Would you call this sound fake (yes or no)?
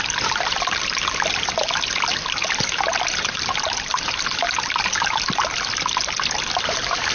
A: no